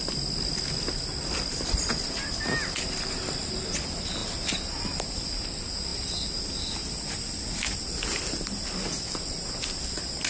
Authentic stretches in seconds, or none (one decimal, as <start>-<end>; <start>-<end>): 0.0-10.3

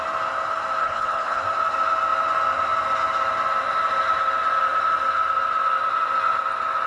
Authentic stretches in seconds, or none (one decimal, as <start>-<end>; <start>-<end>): 0.0-0.8; 1.4-6.9

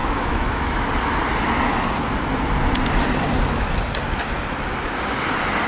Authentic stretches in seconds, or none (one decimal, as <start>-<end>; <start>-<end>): 0.9-5.7

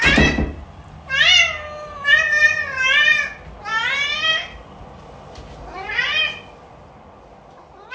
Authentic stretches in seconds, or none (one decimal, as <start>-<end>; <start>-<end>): 0.0-3.7; 5.9-7.9